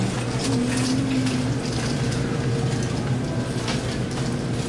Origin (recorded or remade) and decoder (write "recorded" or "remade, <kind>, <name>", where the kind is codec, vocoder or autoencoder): recorded